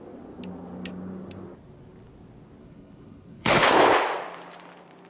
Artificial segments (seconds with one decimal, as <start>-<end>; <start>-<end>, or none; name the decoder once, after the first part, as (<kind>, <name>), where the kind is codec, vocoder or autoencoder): 2.6-3.8 (codec, HILCodec)